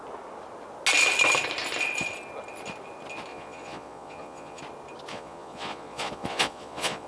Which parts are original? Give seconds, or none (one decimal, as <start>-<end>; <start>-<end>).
0.0-3.3; 4.6-5.1